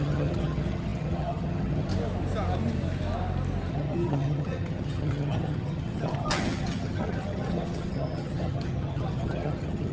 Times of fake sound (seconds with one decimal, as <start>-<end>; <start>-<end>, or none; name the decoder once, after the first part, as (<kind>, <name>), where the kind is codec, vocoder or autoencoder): 0.0-1.9 (vocoder, HiFi-GAN); 3.7-9.9